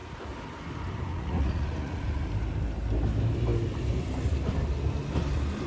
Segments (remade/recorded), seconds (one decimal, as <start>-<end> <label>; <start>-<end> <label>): 0.0-1.1 recorded; 1.1-2.3 remade; 2.3-5.7 recorded